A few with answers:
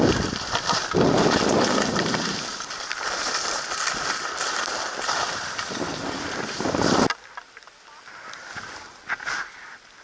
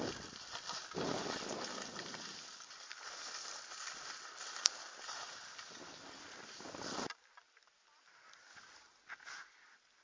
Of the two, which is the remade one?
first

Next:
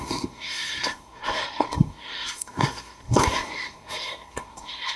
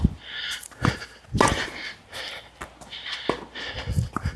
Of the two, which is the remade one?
first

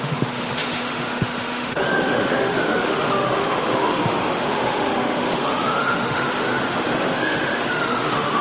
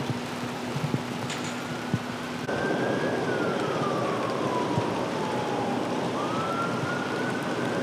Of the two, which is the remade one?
first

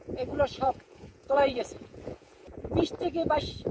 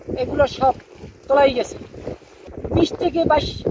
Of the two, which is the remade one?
first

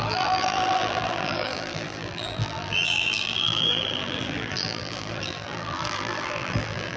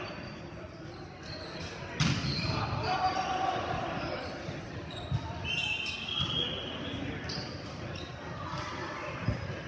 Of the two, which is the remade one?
first